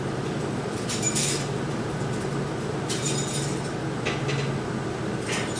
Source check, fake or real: real